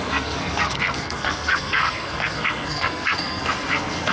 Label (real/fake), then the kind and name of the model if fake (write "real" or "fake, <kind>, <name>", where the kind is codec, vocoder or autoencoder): fake, codec, SNAC